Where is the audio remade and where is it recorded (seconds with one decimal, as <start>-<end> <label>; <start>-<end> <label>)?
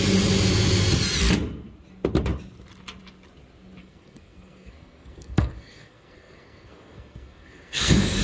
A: 0.0-3.8 recorded; 3.8-8.2 remade